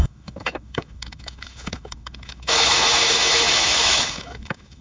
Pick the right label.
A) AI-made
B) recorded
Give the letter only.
A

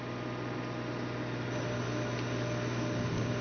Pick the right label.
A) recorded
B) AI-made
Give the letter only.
A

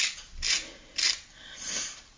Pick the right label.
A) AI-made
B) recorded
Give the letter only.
B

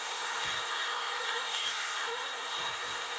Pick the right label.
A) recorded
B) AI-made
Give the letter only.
B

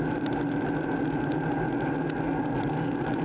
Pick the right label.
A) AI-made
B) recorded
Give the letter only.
B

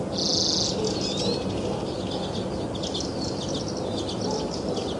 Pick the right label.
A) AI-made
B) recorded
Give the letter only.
B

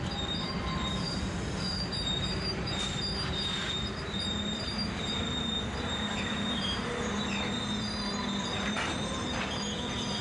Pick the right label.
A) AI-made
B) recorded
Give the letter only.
A